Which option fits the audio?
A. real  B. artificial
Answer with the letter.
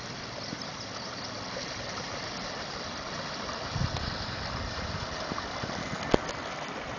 A